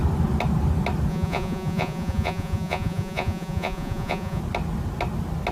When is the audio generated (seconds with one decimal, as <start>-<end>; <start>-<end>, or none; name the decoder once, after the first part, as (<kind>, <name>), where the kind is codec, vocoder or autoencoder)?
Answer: 1.1-4.4 (vocoder, Vocos)